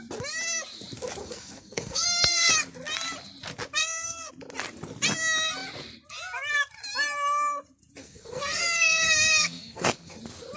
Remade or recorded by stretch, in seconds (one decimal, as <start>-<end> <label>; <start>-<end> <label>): 0.0-1.2 recorded; 1.2-2.5 remade; 2.5-3.8 recorded; 3.8-4.3 remade; 4.3-8.0 recorded; 8.0-10.2 remade; 10.2-10.6 recorded